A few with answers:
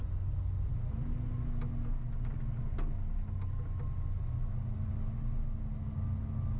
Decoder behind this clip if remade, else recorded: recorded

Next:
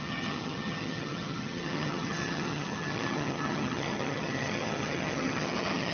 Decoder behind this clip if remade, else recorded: remade, vocoder, HiFi-GAN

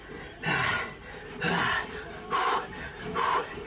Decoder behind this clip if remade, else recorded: remade, vocoder, BigVGAN v2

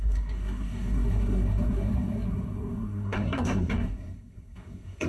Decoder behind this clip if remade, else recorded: remade, codec, SNAC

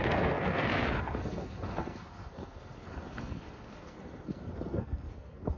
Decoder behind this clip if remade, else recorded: remade, codec, SNAC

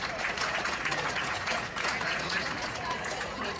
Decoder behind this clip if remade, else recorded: remade, vocoder, Vocos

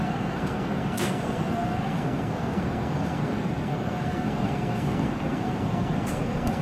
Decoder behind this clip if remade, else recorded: remade, codec, SNAC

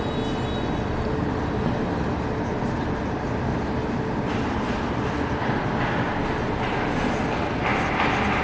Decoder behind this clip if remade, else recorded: recorded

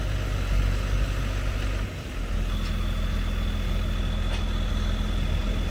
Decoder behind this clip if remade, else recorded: recorded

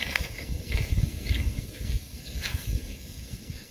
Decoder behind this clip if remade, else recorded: remade, codec, SNAC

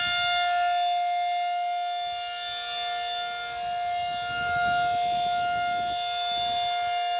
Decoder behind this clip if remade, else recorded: recorded